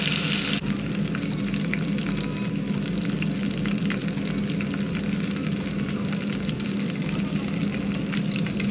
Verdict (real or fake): real